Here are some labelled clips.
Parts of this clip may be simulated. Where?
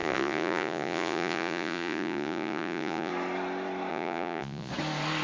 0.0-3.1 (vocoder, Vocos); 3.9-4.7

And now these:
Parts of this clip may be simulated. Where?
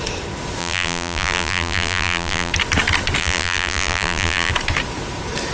0.6-2.5 (vocoder, BigVGAN v2); 3.2-4.5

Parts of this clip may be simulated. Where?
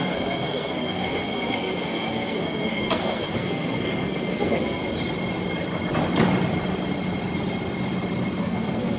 0.0-4.8 (codec, SNAC); 8.4-9.0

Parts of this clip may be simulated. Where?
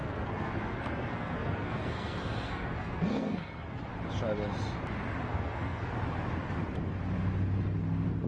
0.0-3.9 (codec, SNAC); 5.3-5.9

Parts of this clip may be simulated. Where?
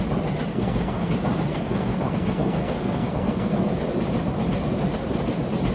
0.5-1.1 (codec, SNAC); 1.5-3.8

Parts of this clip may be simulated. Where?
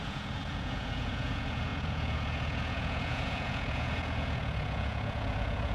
0.0-5.7 (vocoder, Vocos)